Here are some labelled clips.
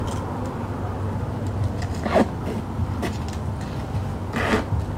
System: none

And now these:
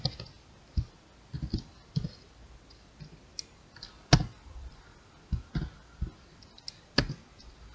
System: none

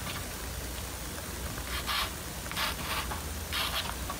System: none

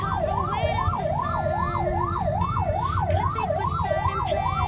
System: none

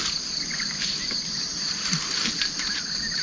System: none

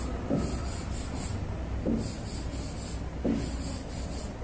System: none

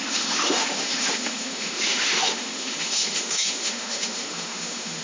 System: autoencoder, DAC-VAE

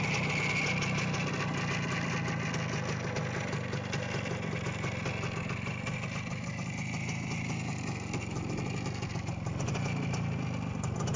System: none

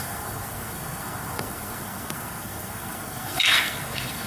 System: codec, SNAC